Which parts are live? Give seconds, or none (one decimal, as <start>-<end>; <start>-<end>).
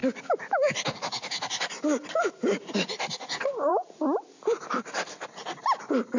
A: 0.0-6.2